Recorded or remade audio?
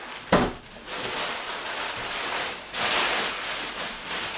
recorded